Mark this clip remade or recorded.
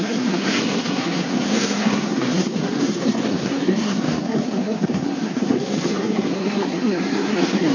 remade